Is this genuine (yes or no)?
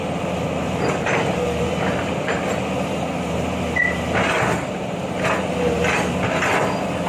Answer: yes